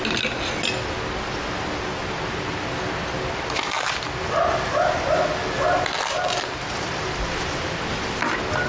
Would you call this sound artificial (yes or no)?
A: no